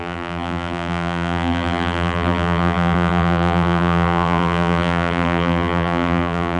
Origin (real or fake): fake